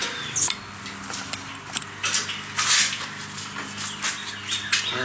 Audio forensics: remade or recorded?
recorded